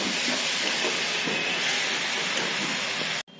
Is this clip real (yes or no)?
yes